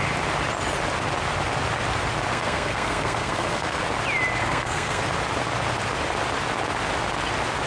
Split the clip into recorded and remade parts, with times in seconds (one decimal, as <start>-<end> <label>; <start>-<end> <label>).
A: 0.0-2.3 recorded; 2.3-3.8 remade; 3.8-4.4 recorded; 4.4-5.0 remade; 5.0-7.7 recorded